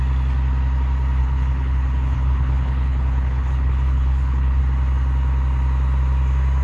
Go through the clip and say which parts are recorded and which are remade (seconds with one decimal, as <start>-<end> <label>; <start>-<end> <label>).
0.0-1.2 recorded; 1.2-4.6 remade; 4.6-6.6 recorded